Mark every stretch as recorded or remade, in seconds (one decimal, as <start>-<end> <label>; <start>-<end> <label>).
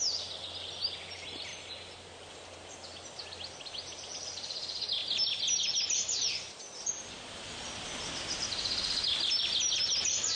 0.0-10.4 recorded